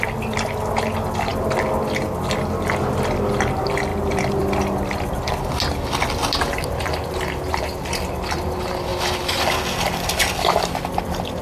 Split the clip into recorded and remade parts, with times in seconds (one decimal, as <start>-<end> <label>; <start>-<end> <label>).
0.0-3.9 recorded; 3.9-5.3 remade; 5.3-11.4 recorded